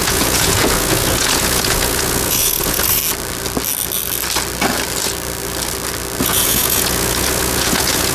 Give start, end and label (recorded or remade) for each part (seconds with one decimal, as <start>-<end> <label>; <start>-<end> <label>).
0.0-3.0 remade; 3.0-6.2 recorded; 6.2-8.1 remade

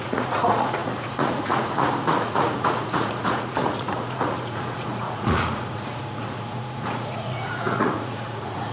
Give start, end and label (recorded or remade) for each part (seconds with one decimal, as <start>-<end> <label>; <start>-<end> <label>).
0.0-8.7 remade

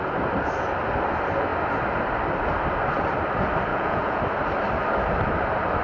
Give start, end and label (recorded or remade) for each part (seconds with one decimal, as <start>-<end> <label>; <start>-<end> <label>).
0.0-3.7 recorded; 3.7-4.2 remade; 4.2-5.8 recorded

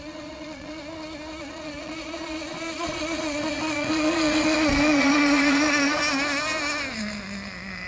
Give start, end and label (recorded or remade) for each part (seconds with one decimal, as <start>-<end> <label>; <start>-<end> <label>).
0.0-0.8 remade; 0.8-1.4 recorded; 1.4-6.0 remade; 6.0-7.9 recorded

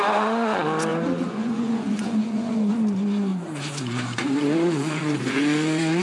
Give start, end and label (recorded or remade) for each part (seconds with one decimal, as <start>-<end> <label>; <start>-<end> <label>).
0.0-0.9 recorded; 0.9-2.7 remade; 2.7-3.3 recorded; 3.3-6.0 remade

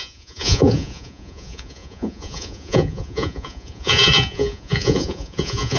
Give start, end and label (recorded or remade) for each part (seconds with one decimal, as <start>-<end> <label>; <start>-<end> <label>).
0.0-5.8 remade

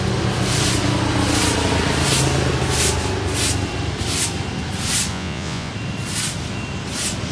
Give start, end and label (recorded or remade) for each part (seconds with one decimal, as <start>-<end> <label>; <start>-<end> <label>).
0.0-5.1 recorded; 5.1-5.7 remade; 5.7-7.3 recorded